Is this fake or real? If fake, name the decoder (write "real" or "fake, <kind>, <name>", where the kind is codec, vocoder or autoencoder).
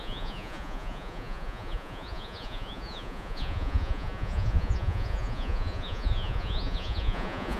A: fake, vocoder, Vocos